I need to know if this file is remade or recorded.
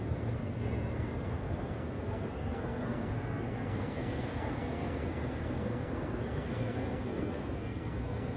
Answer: remade